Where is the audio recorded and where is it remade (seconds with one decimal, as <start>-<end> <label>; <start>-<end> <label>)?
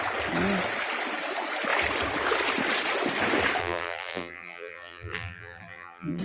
0.0-3.6 recorded; 3.6-6.2 remade